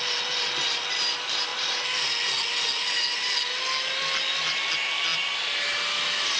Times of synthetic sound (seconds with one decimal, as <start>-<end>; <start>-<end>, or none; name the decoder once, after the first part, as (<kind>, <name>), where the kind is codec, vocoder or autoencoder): none

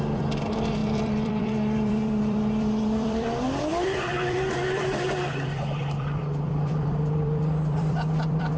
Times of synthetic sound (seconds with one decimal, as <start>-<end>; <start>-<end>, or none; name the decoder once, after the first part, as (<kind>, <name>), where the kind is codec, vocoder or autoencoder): 0.0-8.6 (vocoder, BigVGAN v2)

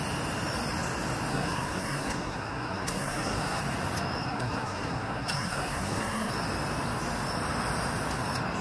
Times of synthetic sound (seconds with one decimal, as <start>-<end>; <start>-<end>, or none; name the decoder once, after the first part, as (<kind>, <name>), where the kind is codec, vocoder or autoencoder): 1.3-3.6 (codec, SNAC); 4.2-6.3

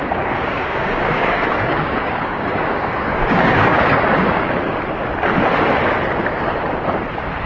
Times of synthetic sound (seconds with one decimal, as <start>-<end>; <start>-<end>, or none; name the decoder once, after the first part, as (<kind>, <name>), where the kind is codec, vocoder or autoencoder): 0.0-4.5 (codec, DAC)